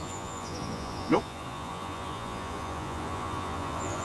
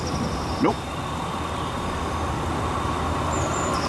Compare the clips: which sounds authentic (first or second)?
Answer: second